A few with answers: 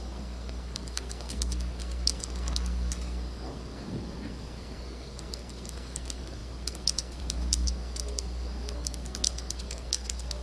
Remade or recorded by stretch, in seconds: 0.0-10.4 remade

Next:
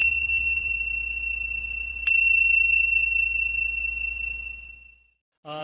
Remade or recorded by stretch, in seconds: 0.0-0.7 remade; 0.7-5.6 recorded

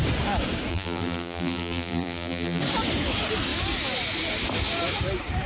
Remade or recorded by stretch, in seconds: 0.0-0.7 recorded; 0.7-2.6 remade; 2.6-5.5 recorded

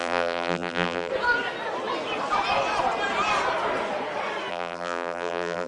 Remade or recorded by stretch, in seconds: 0.0-1.1 remade; 1.1-4.5 recorded; 4.5-5.7 remade

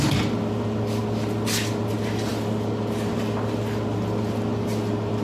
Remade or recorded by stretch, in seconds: 0.0-5.2 recorded

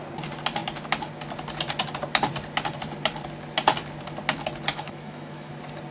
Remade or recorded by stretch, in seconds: 0.0-4.7 recorded; 4.7-5.5 remade; 5.5-5.9 recorded

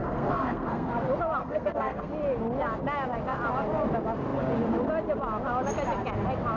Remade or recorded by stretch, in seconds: 0.0-0.9 remade; 0.9-1.4 recorded; 1.4-2.1 remade; 2.1-6.6 recorded

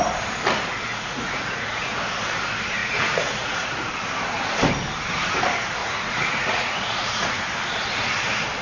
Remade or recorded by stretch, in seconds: 0.0-0.9 recorded; 0.9-2.0 remade; 2.0-2.8 recorded; 2.8-3.9 remade; 3.9-5.8 recorded; 5.8-7.4 remade; 7.4-8.6 recorded